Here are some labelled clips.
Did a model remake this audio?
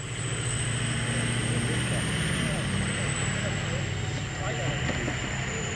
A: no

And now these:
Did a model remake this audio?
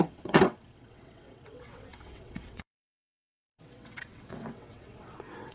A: yes